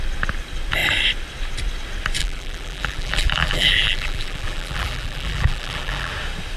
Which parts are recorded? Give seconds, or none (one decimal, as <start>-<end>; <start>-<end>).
0.0-2.2; 6.1-6.6